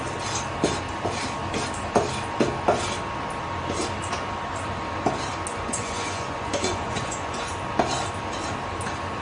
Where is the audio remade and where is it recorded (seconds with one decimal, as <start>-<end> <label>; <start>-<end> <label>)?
0.0-5.5 recorded; 5.5-7.5 remade; 7.5-9.2 recorded